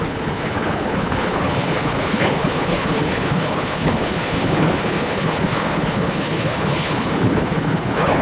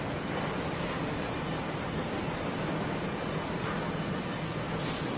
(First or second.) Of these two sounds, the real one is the second